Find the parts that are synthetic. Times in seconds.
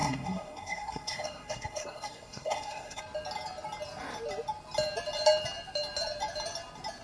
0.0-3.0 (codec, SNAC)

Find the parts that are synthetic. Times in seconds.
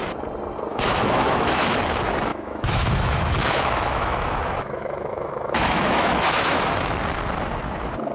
0.7-1.6 (autoencoder, DAC-VAE); 2.3-6.9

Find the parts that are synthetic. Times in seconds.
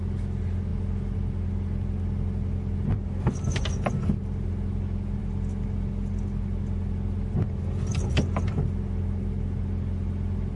none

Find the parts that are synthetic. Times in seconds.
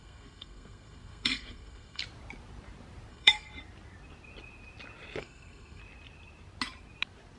0.0-2.0 (codec, SNAC); 3.1-3.5; 5.2-5.8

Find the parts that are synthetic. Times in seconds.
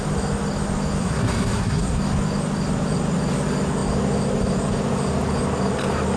1.0-2.0 (codec, SNAC)